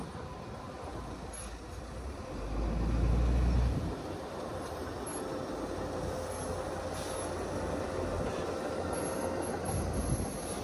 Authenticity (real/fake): real